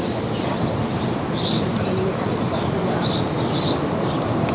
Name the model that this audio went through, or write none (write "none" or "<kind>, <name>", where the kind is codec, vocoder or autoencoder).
vocoder, BigVGAN v2